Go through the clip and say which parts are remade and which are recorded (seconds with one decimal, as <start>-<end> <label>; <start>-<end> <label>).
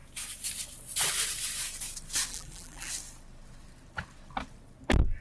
0.0-2.3 recorded; 2.3-2.9 remade; 2.9-5.2 recorded